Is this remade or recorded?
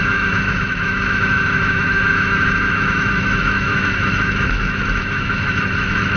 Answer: remade